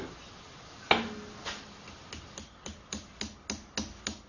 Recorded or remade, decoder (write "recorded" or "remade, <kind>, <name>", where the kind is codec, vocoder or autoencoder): recorded